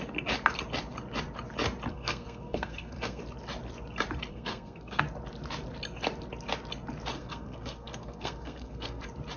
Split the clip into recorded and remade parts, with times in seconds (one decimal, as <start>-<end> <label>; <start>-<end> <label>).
0.0-1.9 recorded; 1.9-3.2 remade; 3.2-4.3 recorded; 4.3-5.0 remade; 5.0-7.1 recorded; 7.1-9.0 remade; 9.0-9.4 recorded